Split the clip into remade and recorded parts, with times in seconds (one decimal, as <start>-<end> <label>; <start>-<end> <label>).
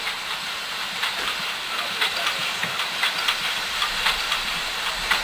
0.0-5.2 remade